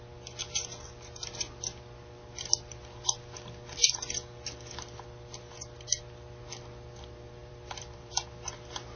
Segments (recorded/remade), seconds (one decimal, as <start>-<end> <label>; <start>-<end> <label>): 0.0-7.4 recorded; 7.4-8.1 remade; 8.1-9.0 recorded